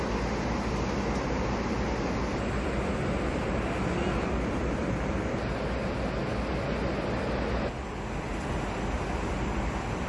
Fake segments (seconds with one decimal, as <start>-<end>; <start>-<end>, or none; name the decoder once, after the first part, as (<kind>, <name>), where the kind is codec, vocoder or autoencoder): none